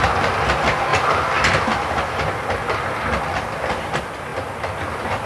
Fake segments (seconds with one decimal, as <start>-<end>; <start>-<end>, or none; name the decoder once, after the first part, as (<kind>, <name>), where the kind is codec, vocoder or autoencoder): none